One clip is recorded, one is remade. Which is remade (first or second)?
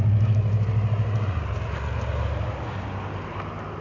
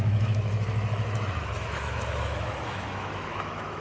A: second